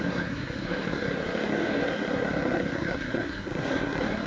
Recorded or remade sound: remade